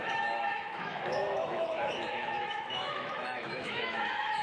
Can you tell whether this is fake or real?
fake